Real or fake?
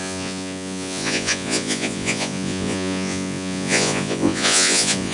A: fake